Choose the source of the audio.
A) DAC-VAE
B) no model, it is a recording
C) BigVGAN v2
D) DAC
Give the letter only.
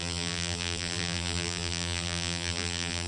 C